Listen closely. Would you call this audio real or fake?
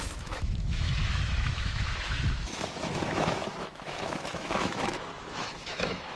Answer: fake